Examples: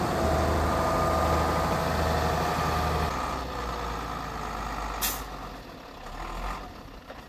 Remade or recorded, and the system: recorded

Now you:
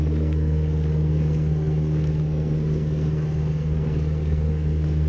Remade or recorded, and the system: remade, codec, SNAC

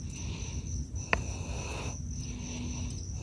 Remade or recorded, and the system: recorded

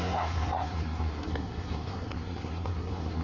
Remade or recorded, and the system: remade, codec, SNAC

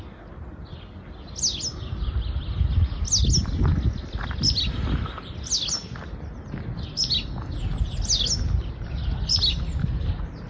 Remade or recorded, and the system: recorded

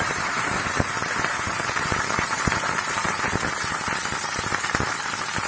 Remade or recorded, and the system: remade, vocoder, BigVGAN v2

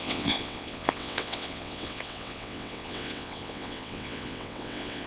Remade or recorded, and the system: remade, vocoder, WaveNeXt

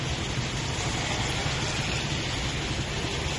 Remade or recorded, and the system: recorded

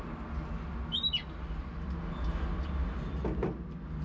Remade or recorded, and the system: recorded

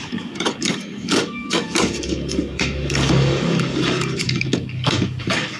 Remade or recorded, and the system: remade, codec, DAC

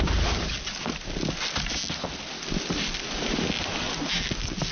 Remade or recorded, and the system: recorded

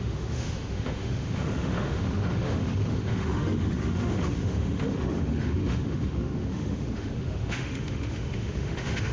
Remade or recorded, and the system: remade, autoencoder, DAC-VAE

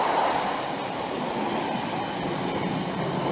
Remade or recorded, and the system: recorded